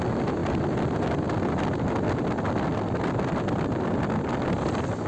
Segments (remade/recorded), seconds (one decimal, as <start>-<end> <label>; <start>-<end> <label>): 0.0-5.1 recorded

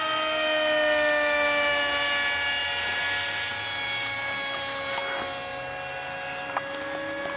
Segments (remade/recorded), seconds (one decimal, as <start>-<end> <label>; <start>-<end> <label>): 0.0-7.4 recorded

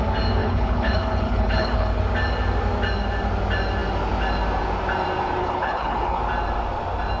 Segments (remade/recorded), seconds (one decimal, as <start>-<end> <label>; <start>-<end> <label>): 0.0-0.4 recorded; 0.4-2.0 remade; 2.0-5.4 recorded; 5.4-6.2 remade; 6.2-7.2 recorded

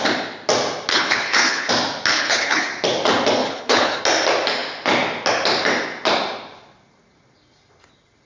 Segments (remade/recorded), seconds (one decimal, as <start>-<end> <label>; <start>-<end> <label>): 0.0-0.9 recorded; 0.9-1.7 remade; 1.7-2.1 recorded; 2.1-2.7 remade; 2.7-3.4 recorded; 3.4-4.0 remade; 4.0-8.3 recorded

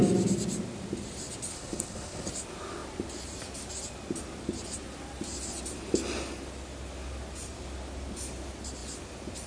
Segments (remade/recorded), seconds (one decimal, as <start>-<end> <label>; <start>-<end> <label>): 0.0-1.5 recorded; 1.5-2.3 remade; 2.3-9.5 recorded

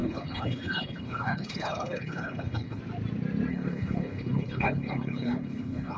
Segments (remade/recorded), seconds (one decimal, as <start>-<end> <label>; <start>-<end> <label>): 0.0-2.8 remade; 2.8-3.5 recorded; 3.5-6.0 remade

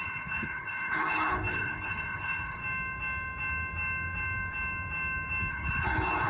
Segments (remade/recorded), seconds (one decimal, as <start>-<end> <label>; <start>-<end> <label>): 0.0-2.6 remade; 2.6-5.5 recorded; 5.5-6.3 remade

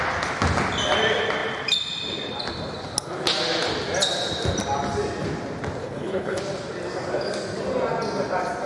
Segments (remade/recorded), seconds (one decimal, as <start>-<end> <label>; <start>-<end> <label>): 0.0-5.8 recorded; 5.8-6.4 remade; 6.4-8.7 recorded